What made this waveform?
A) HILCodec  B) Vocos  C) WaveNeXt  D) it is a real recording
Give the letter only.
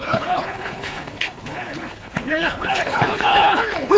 A